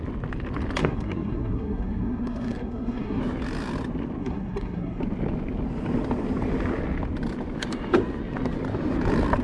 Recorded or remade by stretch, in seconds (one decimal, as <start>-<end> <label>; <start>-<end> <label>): 0.0-0.8 recorded; 0.8-3.2 remade; 3.2-4.2 recorded; 4.2-5.0 remade; 5.0-9.4 recorded